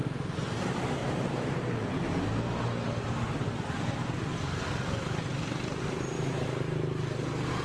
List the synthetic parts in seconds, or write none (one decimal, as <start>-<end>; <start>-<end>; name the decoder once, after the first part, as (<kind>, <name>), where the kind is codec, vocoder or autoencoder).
0.0-0.6 (vocoder, BigVGAN v2); 1.0-1.6